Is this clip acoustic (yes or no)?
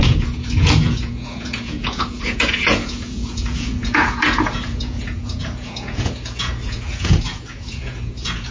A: no